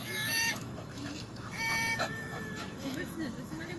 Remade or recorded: remade